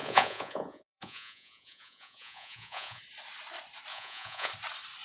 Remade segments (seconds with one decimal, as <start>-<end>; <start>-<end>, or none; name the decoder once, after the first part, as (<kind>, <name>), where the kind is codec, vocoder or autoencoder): 0.0-3.0 (vocoder, Vocos); 3.9-4.5